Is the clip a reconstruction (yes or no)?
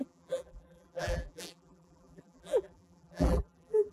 yes